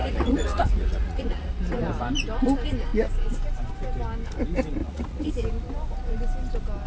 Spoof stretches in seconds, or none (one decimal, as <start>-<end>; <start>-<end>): 0.0-1.5; 4.8-5.3

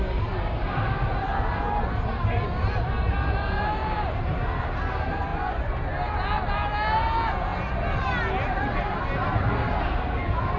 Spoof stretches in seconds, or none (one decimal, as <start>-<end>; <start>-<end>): 5.3-5.8

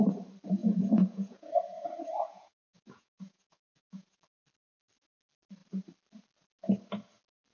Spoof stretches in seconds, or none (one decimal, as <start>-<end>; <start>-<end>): 0.6-4.2